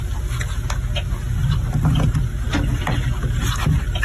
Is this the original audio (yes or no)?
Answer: yes